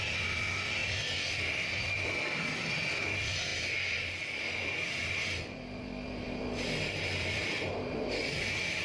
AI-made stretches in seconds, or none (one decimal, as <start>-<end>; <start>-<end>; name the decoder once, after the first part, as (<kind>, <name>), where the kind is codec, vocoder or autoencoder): none